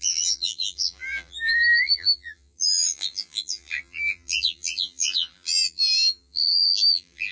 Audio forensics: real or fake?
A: fake